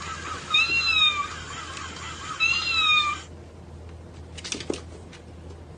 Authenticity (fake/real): real